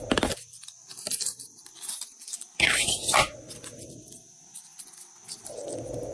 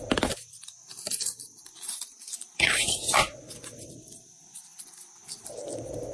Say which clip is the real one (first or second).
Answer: first